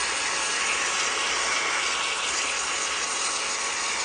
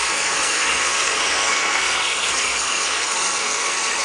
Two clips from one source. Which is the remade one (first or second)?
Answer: second